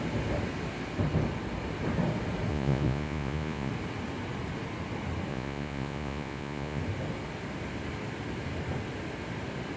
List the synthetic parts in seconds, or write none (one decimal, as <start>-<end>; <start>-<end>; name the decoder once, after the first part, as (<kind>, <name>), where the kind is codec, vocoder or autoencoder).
2.5-3.7 (vocoder, Vocos); 5.3-6.8